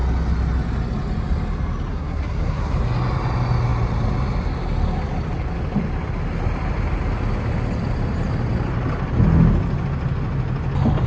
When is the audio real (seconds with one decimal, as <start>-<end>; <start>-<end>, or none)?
0.0-1.9; 2.7-11.1